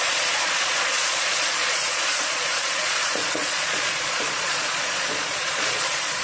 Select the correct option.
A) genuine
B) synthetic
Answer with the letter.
B